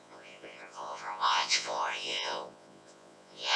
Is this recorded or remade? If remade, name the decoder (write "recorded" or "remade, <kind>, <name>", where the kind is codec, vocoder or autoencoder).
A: remade, vocoder, Vocos